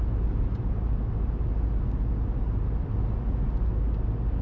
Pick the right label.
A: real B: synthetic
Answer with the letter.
A